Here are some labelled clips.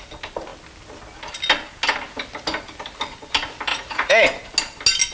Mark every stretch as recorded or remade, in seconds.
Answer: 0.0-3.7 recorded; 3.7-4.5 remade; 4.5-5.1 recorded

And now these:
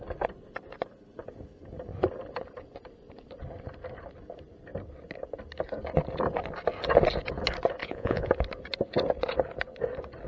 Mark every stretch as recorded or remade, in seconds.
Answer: 0.0-7.8 recorded; 7.8-8.3 remade; 8.3-10.3 recorded

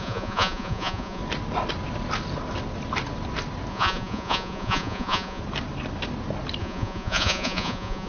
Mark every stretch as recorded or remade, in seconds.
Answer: 0.0-1.2 remade; 1.2-3.7 recorded; 3.7-5.4 remade; 5.4-6.6 recorded; 6.6-8.1 remade

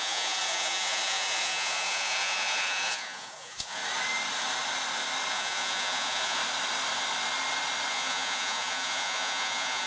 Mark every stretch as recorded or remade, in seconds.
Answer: 0.0-3.8 remade; 3.8-5.3 recorded; 5.3-6.4 remade; 6.4-7.9 recorded; 7.9-9.9 remade